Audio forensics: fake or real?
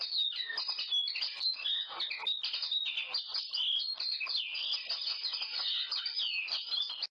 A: real